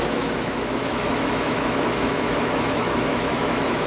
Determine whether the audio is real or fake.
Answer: fake